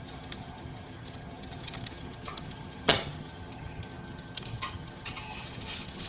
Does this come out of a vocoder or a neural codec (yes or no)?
yes